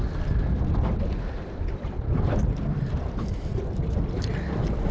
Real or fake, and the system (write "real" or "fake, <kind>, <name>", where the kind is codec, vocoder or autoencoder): real